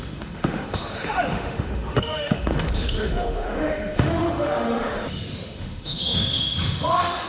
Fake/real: fake